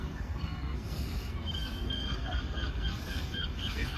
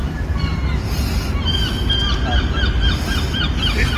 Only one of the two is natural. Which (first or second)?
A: second